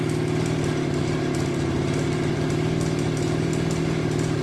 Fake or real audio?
real